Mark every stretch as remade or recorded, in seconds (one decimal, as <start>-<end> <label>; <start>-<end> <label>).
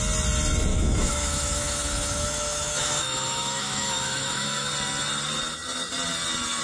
0.0-0.7 recorded; 0.7-4.7 remade; 4.7-6.6 recorded